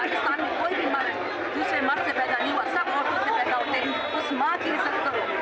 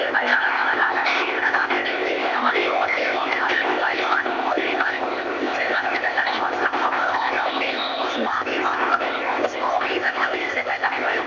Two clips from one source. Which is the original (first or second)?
first